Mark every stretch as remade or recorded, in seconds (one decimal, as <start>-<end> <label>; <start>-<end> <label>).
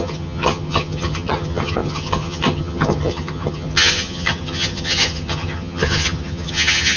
0.0-7.0 remade